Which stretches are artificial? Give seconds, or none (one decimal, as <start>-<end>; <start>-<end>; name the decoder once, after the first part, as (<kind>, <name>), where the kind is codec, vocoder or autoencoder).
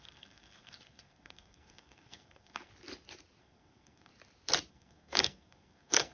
0.0-2.7 (codec, SNAC); 3.4-4.1; 4.7-6.1